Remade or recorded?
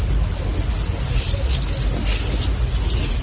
recorded